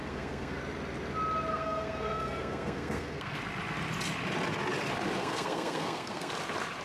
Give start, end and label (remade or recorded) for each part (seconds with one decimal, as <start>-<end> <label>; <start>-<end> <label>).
0.0-0.6 remade; 0.6-1.5 recorded; 1.5-3.4 remade; 3.4-5.2 recorded; 5.2-6.3 remade; 6.3-6.8 recorded